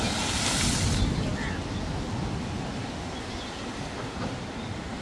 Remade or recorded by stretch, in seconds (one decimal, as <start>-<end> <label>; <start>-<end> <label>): 0.0-5.0 recorded